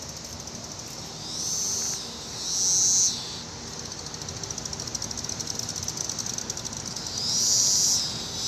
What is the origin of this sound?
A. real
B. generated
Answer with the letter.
A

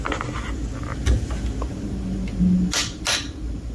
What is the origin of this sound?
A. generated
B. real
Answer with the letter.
B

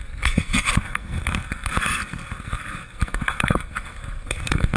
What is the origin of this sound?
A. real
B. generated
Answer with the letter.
B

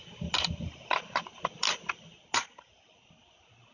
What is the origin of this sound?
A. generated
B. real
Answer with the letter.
B